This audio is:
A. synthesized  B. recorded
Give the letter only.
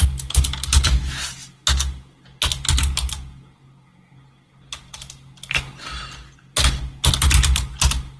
B